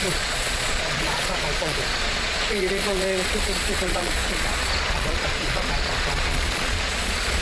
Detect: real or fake fake